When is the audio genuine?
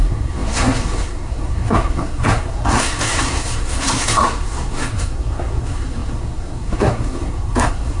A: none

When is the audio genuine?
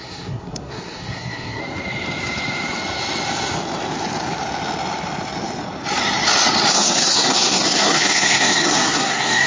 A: 1.6-6.7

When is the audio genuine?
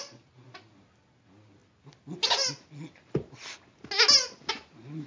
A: 0.0-5.1